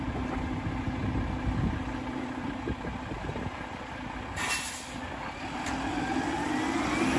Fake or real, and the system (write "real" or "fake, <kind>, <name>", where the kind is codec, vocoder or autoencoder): real